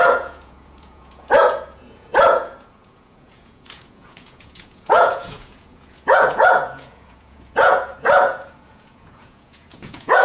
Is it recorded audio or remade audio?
remade